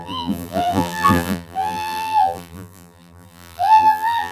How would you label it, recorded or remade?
remade